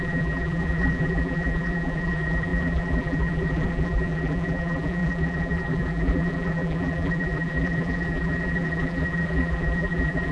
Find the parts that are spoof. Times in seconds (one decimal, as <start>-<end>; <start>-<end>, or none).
0.0-10.3